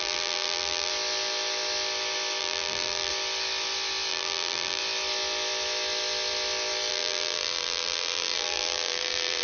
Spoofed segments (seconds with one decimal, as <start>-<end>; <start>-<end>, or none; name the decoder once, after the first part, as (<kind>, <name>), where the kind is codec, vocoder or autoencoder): 0.0-0.9 (vocoder, BigVGAN v2); 2.4-3.1; 4.1-4.8; 6.9-9.4